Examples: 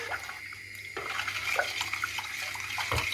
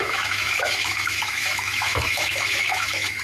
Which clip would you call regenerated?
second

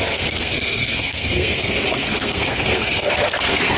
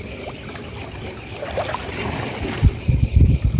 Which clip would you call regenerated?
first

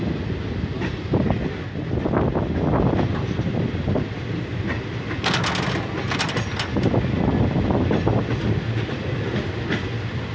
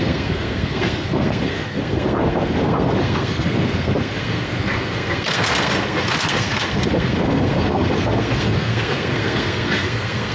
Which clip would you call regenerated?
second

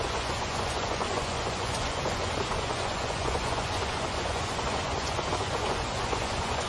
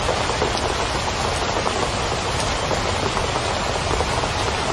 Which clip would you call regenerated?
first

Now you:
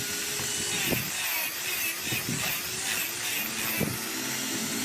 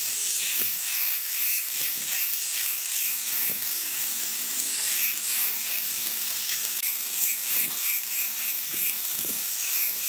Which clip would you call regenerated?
second